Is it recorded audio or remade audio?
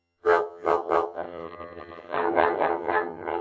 remade